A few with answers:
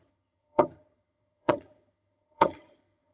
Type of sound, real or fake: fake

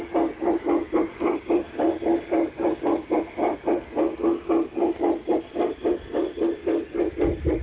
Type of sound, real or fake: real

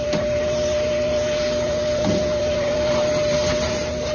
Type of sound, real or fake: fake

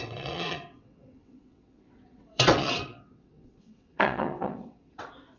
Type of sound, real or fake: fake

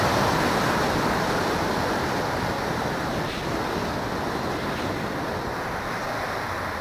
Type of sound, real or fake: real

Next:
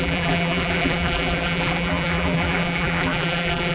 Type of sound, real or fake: fake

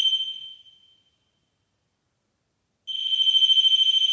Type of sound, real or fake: real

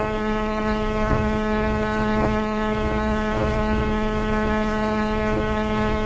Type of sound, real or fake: fake